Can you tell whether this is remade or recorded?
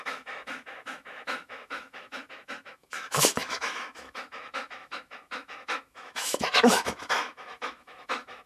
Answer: remade